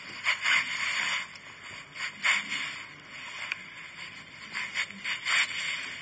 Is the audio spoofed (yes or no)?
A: no